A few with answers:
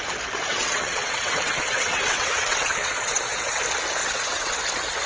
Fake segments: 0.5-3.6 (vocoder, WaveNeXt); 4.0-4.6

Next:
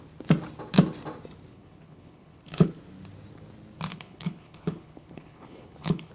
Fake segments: 1.5-2.7 (codec, HILCodec); 3.9-6.1